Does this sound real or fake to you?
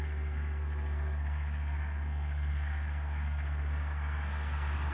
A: fake